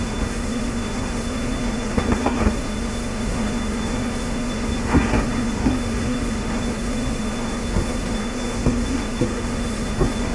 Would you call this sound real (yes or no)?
no